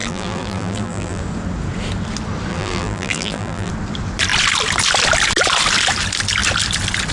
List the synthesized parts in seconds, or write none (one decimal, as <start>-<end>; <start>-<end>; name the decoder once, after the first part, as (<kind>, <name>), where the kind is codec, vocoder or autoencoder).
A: 0.0-1.2 (vocoder, BigVGAN v2); 2.5-3.7

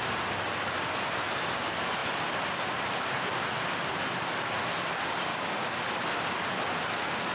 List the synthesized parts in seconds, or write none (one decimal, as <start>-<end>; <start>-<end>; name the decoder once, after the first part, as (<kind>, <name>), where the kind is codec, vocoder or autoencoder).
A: 5.3-5.8 (codec, DAC)

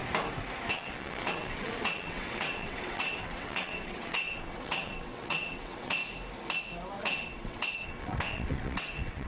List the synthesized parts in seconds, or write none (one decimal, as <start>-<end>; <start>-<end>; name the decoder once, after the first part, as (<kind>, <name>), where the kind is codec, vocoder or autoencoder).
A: 0.7-6.0 (vocoder, WaveNeXt); 7.0-9.3

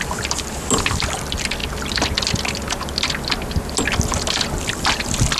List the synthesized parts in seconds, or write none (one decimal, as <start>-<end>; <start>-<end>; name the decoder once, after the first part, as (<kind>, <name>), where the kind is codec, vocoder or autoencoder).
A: none

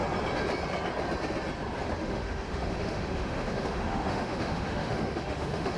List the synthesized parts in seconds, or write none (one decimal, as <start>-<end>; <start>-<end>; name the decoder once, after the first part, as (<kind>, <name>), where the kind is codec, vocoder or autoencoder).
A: 2.0-5.8 (autoencoder, DAC-VAE)

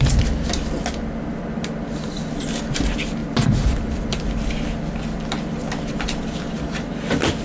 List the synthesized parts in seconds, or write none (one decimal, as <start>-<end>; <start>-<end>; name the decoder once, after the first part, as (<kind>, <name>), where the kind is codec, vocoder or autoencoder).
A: none

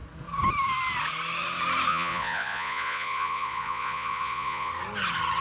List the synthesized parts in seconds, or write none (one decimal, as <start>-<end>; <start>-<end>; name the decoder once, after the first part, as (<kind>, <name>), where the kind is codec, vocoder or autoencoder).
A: 1.9-4.7 (vocoder, Vocos)